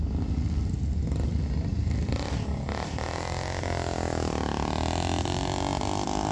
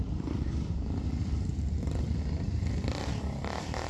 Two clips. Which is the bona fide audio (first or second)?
first